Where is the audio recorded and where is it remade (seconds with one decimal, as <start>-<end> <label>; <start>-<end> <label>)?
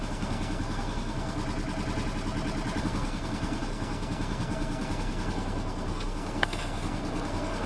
0.0-1.4 remade; 1.4-2.8 recorded; 2.8-7.7 remade